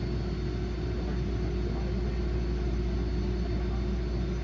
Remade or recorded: recorded